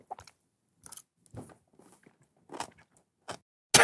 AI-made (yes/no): no